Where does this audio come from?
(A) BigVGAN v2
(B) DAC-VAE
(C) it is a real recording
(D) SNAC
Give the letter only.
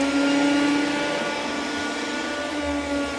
C